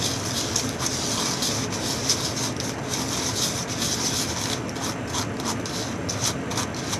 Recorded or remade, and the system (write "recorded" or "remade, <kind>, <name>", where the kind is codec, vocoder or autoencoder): recorded